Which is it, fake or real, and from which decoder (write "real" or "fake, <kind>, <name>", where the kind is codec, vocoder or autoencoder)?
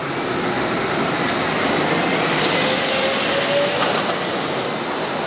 real